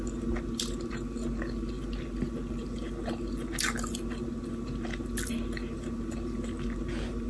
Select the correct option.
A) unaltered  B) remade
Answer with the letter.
A